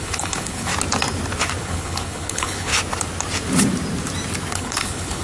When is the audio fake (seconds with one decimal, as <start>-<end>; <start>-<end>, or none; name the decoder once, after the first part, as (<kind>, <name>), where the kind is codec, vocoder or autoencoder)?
0.0-0.7 (codec, HILCodec); 1.6-2.7; 4.5-5.2